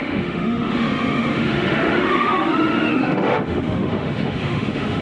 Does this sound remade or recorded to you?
remade